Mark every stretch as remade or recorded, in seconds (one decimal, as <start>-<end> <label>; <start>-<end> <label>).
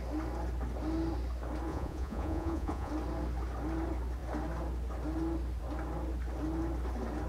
0.0-1.7 recorded; 1.7-2.9 remade; 2.9-7.3 recorded